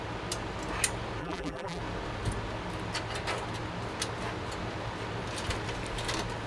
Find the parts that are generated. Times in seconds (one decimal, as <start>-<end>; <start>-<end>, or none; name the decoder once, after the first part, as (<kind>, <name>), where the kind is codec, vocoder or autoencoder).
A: 1.2-1.8 (vocoder, BigVGAN v2)